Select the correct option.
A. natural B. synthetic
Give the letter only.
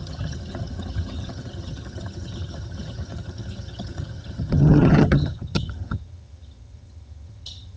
B